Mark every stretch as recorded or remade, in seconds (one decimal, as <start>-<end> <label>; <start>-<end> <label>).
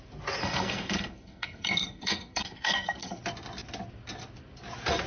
0.0-0.4 recorded; 0.4-3.2 remade; 3.2-5.1 recorded